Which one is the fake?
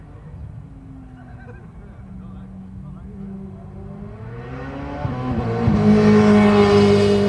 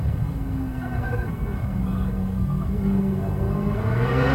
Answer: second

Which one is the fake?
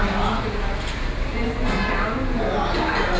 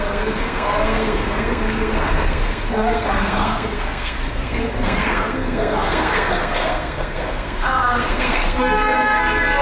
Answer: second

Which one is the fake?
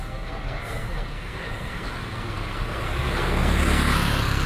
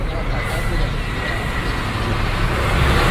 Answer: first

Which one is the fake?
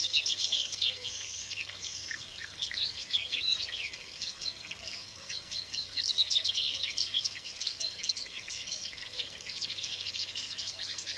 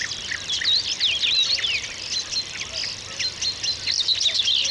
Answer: first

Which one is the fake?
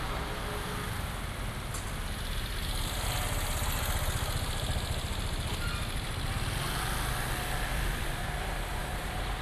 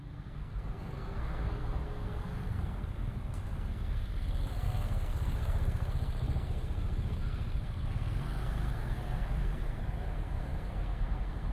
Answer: second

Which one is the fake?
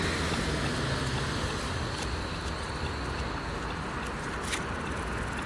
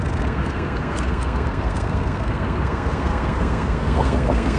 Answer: second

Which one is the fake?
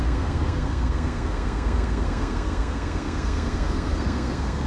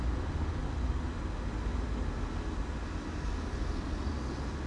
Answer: first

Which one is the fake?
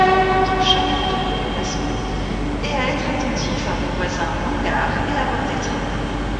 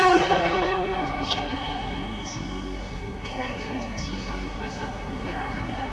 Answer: second